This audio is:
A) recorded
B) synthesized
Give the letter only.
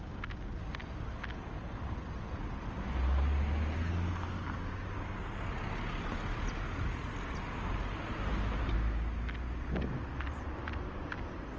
A